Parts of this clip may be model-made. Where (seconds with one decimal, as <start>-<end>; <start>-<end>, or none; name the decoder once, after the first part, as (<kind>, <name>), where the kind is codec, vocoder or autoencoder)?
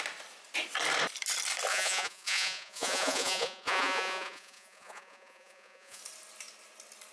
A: 1.7-6.0 (vocoder, Vocos)